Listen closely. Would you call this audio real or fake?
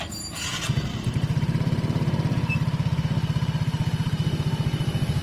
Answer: real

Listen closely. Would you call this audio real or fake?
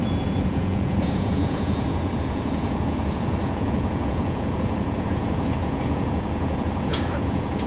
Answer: fake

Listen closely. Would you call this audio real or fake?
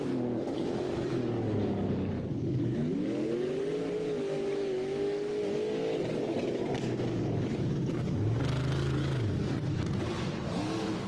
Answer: fake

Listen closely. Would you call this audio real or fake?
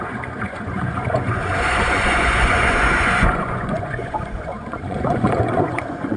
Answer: fake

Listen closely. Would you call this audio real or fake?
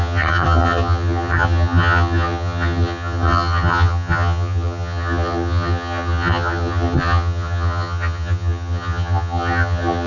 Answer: fake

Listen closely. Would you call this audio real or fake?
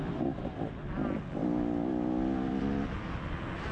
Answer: real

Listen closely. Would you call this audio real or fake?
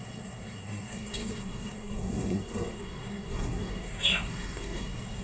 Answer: fake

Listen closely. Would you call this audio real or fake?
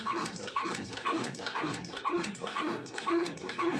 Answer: fake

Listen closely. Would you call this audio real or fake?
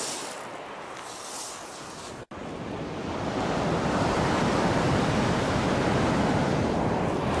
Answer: real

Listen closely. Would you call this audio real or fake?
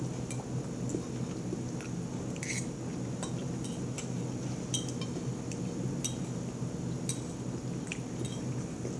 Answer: real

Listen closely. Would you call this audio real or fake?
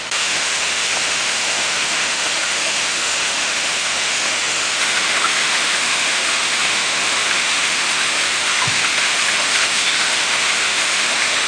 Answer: fake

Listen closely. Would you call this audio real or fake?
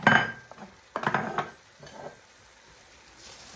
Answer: real